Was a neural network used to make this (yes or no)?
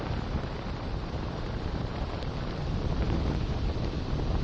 yes